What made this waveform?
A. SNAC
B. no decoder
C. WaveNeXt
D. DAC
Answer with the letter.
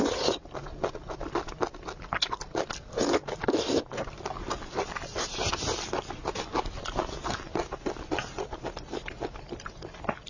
B